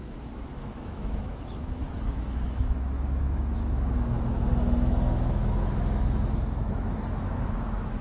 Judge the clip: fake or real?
fake